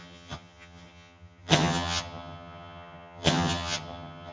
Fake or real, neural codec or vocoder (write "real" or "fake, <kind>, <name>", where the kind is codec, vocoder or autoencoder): fake, vocoder, HiFi-GAN